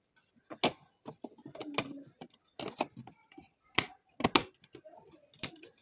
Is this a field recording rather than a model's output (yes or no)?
yes